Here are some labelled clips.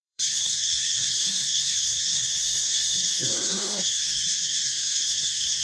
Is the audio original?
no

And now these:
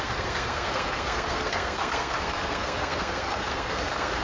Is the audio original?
no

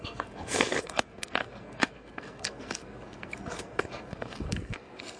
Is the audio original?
no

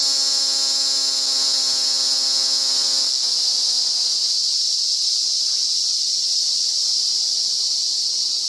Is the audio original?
yes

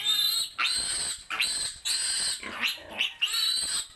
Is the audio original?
yes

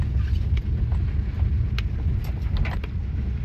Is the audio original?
yes